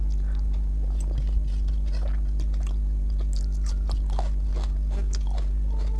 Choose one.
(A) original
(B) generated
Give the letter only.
A